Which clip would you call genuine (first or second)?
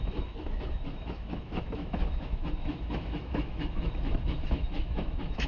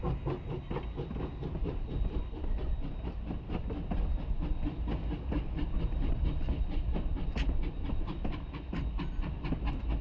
second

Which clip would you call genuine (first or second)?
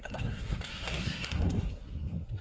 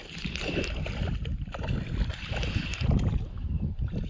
second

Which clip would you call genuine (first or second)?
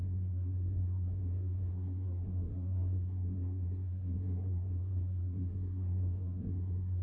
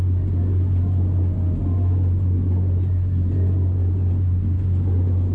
second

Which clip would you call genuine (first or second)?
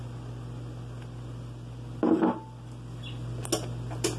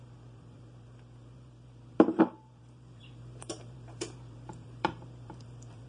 first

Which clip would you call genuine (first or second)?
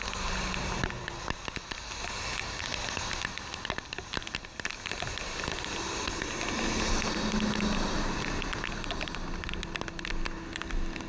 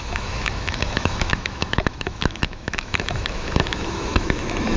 first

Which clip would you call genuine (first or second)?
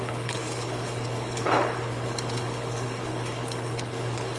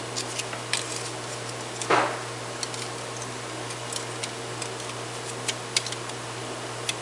second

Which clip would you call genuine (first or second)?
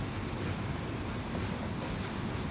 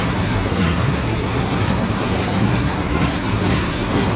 first